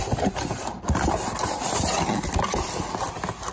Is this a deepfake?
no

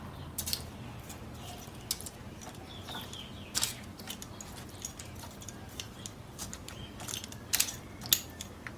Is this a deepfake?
no